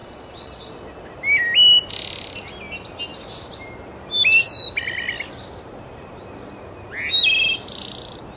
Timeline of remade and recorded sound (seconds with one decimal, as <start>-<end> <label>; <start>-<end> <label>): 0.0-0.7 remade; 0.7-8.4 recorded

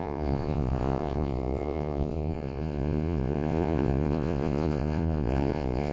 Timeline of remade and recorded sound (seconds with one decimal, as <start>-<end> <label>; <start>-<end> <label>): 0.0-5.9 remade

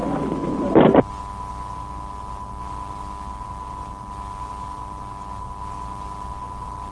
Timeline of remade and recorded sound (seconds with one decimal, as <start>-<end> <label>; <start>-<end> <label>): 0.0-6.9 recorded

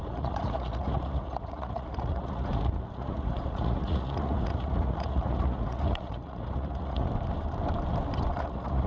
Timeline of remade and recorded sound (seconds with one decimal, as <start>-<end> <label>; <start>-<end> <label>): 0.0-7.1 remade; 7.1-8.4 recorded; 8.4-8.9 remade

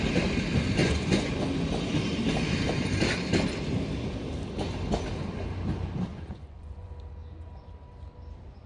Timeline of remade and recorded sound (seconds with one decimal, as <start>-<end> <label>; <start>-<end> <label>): 0.0-0.8 recorded; 0.8-1.4 remade; 1.4-6.1 recorded; 6.1-6.9 remade; 6.9-8.7 recorded

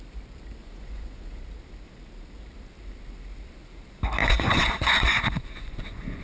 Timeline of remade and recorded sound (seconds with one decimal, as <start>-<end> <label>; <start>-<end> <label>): 0.0-0.6 recorded; 0.6-1.4 remade; 1.4-4.2 recorded; 4.2-6.2 remade

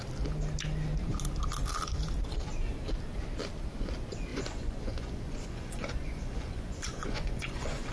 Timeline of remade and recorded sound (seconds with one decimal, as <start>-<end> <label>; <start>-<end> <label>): 0.0-4.3 recorded; 4.3-7.9 remade

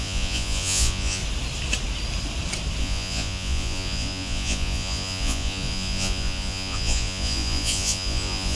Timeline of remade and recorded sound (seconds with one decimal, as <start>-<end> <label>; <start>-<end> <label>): 0.0-1.2 remade; 1.2-2.8 recorded; 2.8-8.5 remade